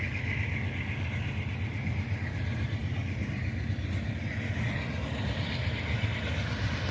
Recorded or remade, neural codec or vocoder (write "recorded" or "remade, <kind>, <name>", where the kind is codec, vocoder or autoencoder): recorded